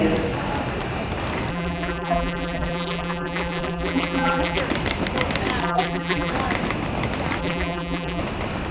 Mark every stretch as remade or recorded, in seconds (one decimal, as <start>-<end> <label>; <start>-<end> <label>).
0.0-1.5 recorded; 1.5-4.6 remade; 4.6-5.6 recorded; 5.6-6.3 remade; 6.3-7.4 recorded; 7.4-8.2 remade; 8.2-8.7 recorded